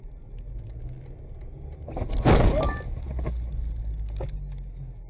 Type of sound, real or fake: real